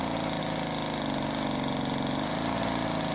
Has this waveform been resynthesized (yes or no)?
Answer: no